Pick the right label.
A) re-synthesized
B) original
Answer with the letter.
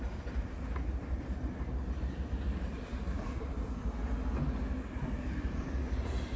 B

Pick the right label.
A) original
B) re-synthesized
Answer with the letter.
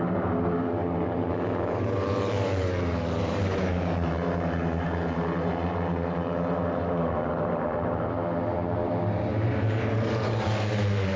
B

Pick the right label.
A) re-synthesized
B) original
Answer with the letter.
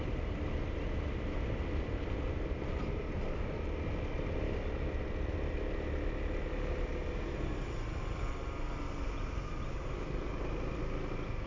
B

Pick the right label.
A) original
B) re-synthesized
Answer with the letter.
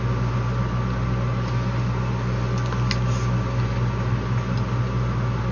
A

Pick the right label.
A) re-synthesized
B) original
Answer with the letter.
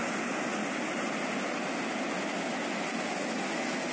B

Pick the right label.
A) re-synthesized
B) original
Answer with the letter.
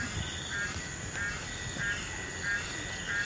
B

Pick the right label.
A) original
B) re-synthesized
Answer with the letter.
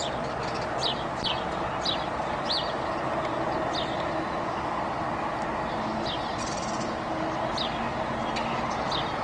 A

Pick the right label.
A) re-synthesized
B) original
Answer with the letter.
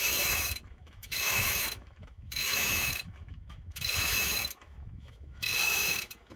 A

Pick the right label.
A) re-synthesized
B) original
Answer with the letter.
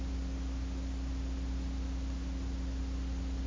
B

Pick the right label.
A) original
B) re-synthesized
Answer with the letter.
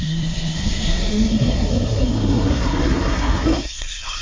B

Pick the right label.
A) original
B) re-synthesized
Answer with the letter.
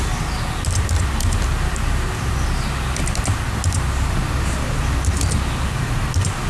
A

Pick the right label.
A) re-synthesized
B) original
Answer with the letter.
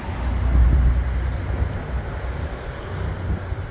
B